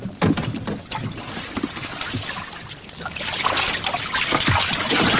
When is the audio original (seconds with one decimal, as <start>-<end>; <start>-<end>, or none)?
0.0-5.2